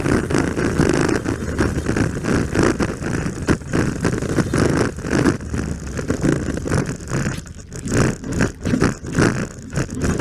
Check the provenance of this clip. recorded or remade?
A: recorded